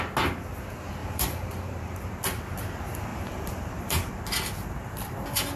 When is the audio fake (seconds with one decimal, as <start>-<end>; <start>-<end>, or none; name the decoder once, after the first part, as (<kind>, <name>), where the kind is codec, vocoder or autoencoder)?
1.0-2.2 (vocoder, BigVGAN v2); 3.1-4.1